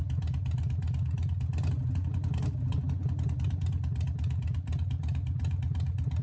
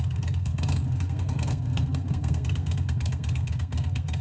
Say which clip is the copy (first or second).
second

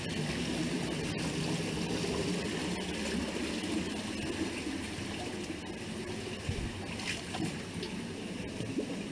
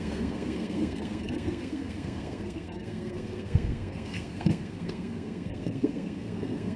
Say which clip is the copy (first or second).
second